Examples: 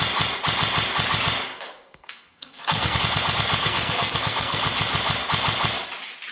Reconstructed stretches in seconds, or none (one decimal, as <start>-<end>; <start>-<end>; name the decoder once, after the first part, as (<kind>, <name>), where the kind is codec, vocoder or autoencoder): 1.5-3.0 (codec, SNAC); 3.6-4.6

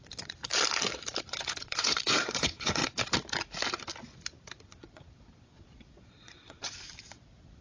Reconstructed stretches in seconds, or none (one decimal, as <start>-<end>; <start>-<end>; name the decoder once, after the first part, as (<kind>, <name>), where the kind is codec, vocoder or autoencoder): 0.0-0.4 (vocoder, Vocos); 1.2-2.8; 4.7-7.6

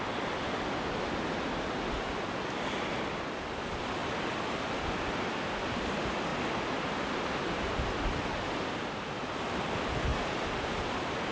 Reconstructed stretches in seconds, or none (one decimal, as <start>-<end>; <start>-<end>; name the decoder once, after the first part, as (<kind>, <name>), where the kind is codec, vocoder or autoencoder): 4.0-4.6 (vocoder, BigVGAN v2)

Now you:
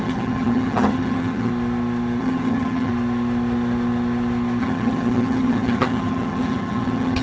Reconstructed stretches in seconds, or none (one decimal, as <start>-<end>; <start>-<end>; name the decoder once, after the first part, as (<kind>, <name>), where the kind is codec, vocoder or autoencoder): 0.0-1.5 (vocoder, HiFi-GAN); 2.2-2.9; 4.6-7.2

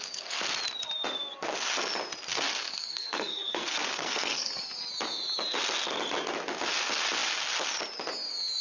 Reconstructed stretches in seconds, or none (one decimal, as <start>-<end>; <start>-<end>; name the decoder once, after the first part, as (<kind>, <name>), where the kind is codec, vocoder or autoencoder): 0.0-0.5 (codec, SNAC); 2.3-4.5

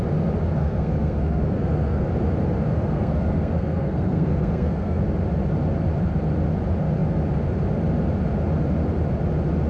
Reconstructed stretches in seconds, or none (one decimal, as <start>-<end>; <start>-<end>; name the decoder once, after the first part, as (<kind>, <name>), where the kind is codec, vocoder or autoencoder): 0.6-2.1 (codec, SNAC); 2.7-5.0